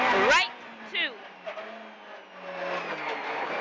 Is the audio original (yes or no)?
yes